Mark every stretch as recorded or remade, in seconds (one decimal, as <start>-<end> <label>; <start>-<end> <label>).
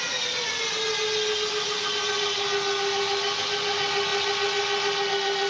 0.0-5.5 recorded